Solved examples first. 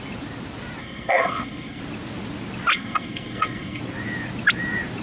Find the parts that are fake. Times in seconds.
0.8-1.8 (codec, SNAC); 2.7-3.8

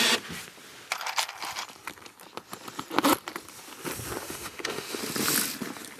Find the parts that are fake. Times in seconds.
4.2-5.0 (autoencoder, DAC-VAE)